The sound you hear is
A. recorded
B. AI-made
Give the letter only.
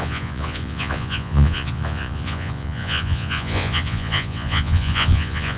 B